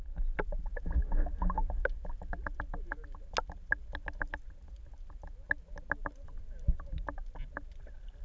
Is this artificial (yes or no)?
no